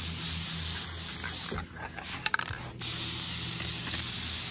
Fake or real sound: real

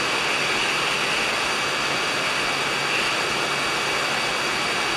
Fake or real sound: real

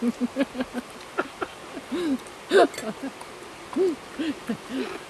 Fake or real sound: real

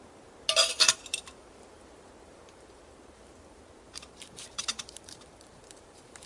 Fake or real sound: fake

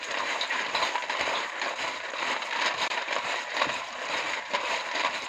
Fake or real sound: fake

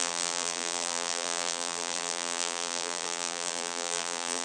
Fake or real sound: fake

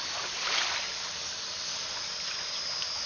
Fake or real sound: fake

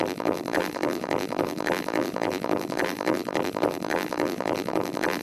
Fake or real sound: fake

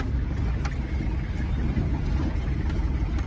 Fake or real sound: real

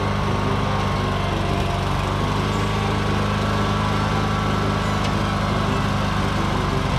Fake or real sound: real